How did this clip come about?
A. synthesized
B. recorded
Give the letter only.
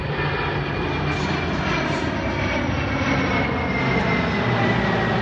B